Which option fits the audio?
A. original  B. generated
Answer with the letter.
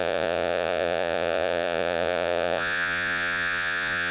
B